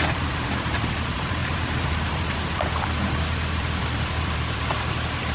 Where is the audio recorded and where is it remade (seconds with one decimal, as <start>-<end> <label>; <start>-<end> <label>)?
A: 0.0-5.3 remade